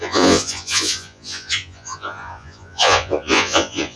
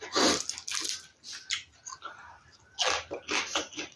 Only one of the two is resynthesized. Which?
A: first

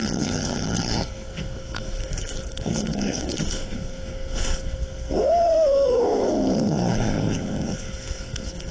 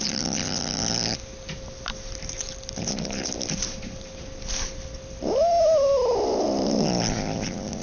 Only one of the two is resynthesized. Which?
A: first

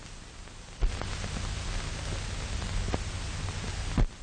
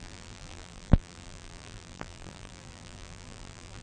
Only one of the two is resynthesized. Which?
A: second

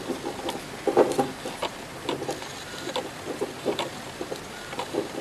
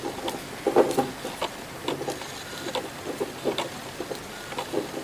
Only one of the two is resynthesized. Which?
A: first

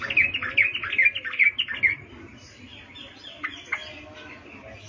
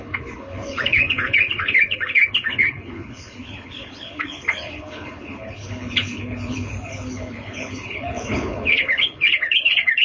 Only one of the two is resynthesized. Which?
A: second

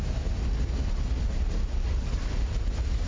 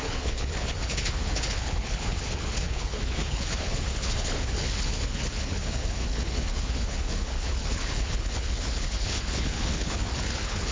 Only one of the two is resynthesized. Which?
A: second